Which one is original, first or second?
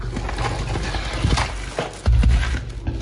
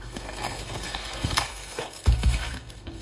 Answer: first